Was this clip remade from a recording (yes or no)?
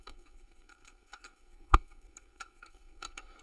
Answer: yes